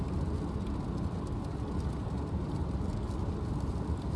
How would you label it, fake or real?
real